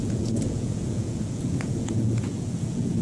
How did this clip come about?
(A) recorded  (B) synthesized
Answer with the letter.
B